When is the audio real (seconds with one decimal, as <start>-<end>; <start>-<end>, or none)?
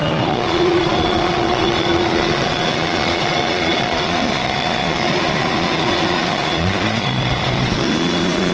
none